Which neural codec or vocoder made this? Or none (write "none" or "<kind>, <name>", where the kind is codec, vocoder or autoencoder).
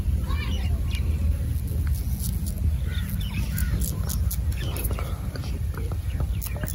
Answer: none